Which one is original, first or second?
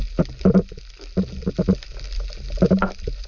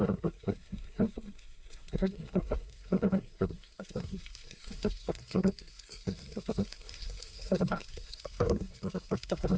first